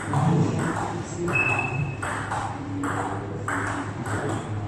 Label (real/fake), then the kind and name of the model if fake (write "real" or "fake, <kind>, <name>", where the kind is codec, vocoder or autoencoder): fake, vocoder, BigVGAN v2